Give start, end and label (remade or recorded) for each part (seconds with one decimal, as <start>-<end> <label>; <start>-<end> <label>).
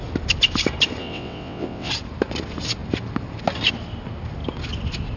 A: 0.0-1.0 recorded; 1.0-1.9 remade; 1.9-5.2 recorded